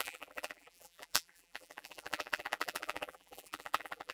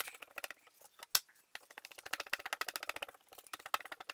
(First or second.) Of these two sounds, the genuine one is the second